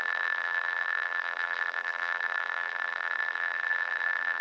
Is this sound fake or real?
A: fake